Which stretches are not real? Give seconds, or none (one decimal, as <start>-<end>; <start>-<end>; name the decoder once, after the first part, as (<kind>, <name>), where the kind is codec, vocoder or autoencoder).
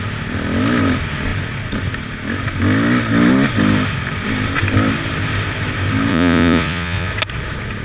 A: 6.1-7.1 (vocoder, Vocos)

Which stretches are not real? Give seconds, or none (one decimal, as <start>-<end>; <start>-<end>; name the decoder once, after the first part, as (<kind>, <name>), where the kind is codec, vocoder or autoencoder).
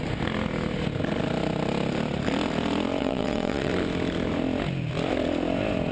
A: 3.0-3.7 (vocoder, WaveNeXt)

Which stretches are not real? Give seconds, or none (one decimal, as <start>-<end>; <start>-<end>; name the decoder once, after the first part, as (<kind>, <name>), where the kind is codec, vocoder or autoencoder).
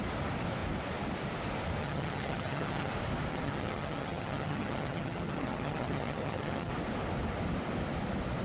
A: 1.8-2.9 (vocoder, HiFi-GAN); 3.3-6.7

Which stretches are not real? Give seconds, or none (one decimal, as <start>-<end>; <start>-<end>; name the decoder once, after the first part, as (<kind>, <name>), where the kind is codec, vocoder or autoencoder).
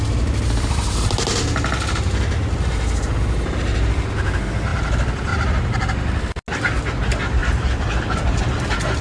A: 4.7-5.3 (vocoder, BigVGAN v2); 7.4-8.6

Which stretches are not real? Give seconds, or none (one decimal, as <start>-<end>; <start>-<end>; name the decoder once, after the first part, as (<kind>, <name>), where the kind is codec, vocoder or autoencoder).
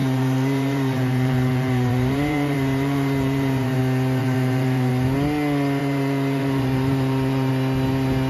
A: 0.0-3.8 (vocoder, BigVGAN v2); 4.2-4.9; 5.8-7.5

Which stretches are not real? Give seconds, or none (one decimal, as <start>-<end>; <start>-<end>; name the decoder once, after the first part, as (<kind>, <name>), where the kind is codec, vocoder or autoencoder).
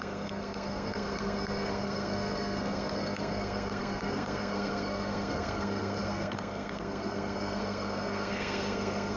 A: 0.0-9.2 (codec, SNAC)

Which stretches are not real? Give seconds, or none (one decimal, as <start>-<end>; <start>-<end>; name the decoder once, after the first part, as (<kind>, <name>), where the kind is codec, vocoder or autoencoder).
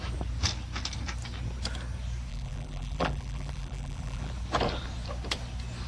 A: 2.3-4.3 (vocoder, BigVGAN v2)